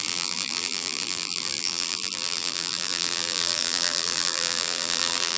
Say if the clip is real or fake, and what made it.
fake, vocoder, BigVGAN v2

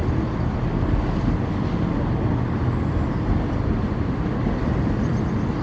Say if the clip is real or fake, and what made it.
real